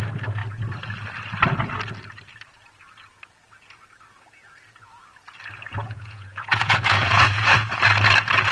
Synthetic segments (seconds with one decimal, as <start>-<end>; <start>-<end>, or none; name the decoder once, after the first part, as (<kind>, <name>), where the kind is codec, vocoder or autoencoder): 5.8-7.8 (vocoder, Vocos)